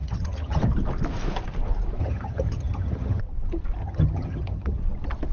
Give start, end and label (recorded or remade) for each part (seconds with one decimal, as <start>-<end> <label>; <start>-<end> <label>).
0.0-0.6 remade; 0.6-2.0 recorded; 2.0-3.2 remade; 3.2-3.8 recorded; 3.8-4.8 remade; 4.8-5.3 recorded